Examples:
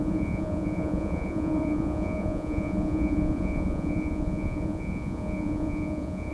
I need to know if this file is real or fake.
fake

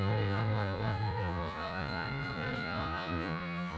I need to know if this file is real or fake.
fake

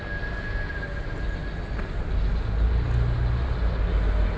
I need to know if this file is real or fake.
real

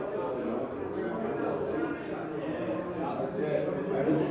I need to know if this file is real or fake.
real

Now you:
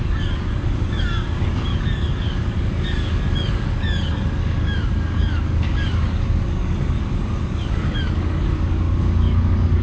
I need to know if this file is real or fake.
fake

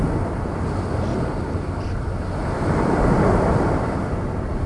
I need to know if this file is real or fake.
real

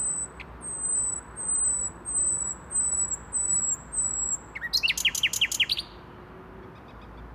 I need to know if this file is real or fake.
real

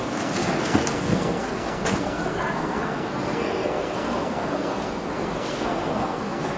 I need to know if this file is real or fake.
fake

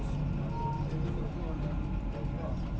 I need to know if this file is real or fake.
real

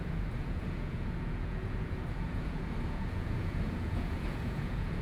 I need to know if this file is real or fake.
fake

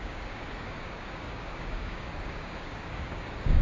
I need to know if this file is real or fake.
fake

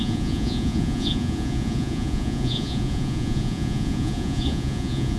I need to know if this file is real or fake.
fake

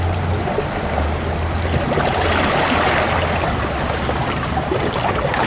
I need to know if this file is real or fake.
real